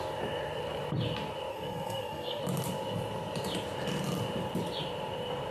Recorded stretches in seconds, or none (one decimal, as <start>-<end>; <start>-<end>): 0.0-1.5; 2.4-5.5